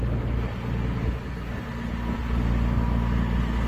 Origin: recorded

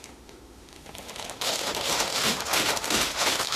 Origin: remade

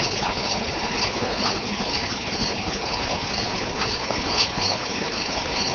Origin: remade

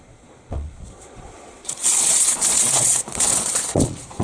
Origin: remade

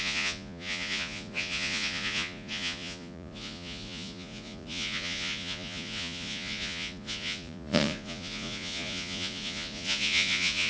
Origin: remade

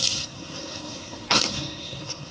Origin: remade